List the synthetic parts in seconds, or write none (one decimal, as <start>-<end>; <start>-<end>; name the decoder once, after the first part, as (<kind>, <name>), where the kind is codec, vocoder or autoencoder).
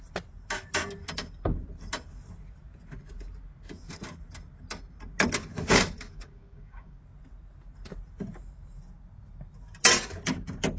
5.5-7.0 (codec, DAC)